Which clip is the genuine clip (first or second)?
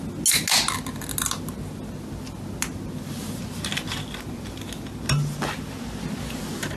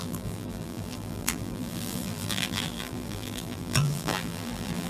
first